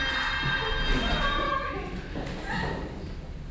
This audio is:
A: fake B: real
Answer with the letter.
B